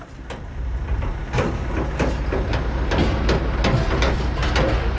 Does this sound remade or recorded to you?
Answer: recorded